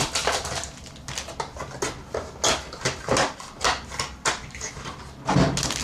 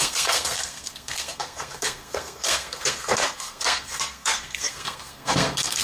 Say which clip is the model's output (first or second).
second